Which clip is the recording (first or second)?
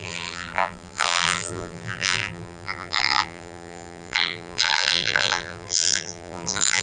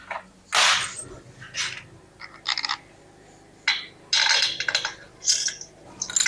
second